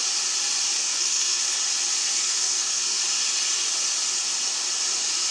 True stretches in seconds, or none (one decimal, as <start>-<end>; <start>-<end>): 0.0-0.8; 1.4-2.0; 3.0-5.3